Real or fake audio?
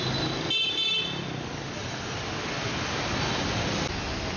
real